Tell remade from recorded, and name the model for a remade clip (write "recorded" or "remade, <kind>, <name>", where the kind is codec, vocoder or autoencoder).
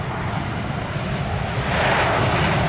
recorded